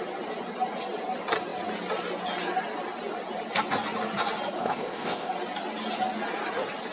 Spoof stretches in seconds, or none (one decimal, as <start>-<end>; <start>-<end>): 4.6-5.3